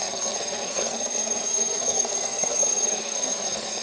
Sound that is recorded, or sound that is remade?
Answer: remade